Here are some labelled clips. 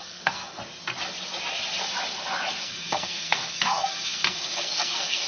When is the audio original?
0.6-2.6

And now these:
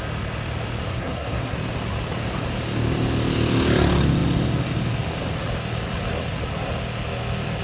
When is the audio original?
0.0-0.9; 1.6-7.6

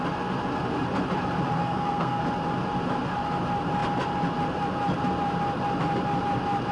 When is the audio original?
0.0-1.6; 2.2-6.7

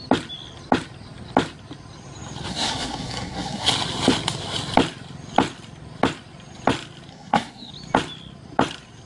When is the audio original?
0.0-2.5; 3.7-7.1; 7.7-9.1

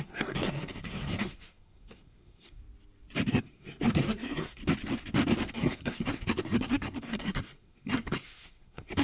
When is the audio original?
2.6-3.3; 4.6-5.5

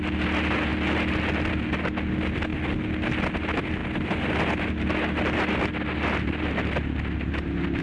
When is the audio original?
0.0-7.8

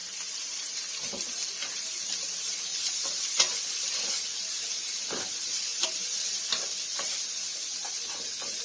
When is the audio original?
0.0-8.6